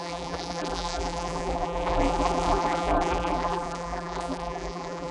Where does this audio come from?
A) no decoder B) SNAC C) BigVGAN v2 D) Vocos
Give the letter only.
C